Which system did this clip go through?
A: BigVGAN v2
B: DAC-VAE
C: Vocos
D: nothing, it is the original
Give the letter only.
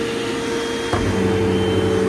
D